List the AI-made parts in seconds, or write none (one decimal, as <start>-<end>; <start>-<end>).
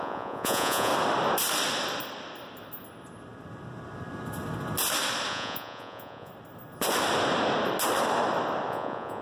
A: 0.0-0.9; 5.3-6.3; 8.7-9.2